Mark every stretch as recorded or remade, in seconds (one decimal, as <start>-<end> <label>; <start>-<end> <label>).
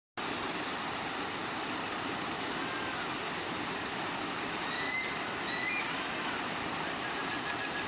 0.0-7.9 recorded